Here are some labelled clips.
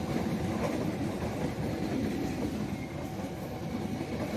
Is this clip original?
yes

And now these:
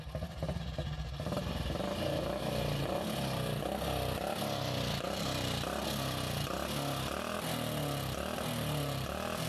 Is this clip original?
yes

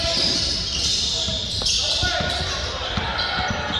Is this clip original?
yes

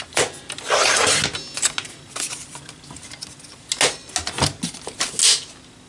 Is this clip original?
yes